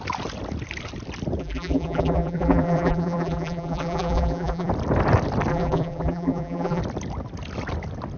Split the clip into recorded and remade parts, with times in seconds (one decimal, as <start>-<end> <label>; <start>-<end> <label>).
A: 0.0-1.4 recorded; 1.4-4.7 remade; 4.7-5.5 recorded; 5.5-6.8 remade; 6.8-8.2 recorded